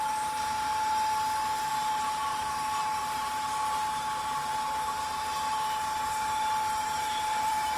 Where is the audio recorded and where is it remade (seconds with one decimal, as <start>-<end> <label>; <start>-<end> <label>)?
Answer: 0.0-0.7 remade; 0.7-1.7 recorded; 1.7-4.5 remade; 4.5-6.8 recorded; 6.8-7.8 remade